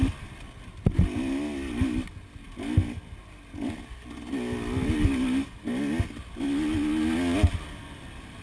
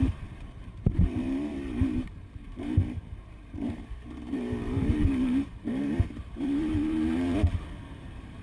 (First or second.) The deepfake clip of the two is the second